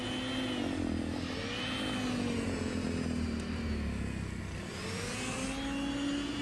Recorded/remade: recorded